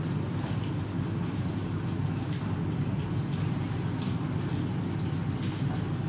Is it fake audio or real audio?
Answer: real